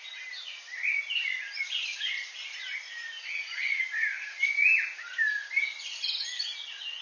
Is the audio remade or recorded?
recorded